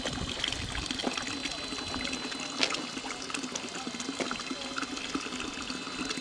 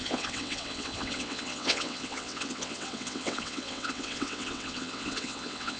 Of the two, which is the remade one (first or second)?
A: second